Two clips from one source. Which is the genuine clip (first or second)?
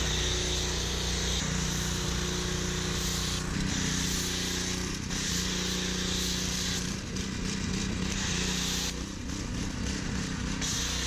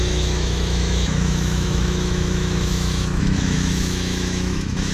first